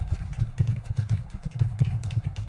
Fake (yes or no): yes